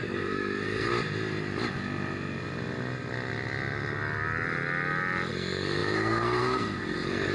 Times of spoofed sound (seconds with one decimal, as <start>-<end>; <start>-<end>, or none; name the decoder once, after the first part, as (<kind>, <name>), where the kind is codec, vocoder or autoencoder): 0.0-0.9 (codec, SNAC); 5.3-7.3